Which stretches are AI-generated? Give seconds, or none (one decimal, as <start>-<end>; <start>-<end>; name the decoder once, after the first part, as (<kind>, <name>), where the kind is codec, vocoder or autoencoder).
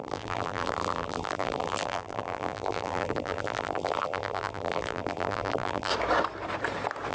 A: 0.0-5.9 (vocoder, BigVGAN v2)